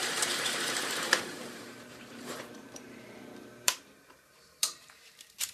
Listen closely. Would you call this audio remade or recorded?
remade